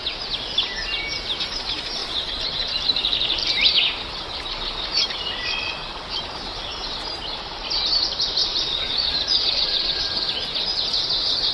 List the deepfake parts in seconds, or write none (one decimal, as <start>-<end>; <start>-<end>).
2.0-2.8; 8.4-10.0